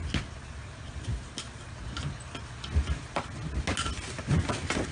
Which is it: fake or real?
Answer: real